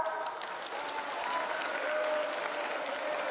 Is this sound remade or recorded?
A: recorded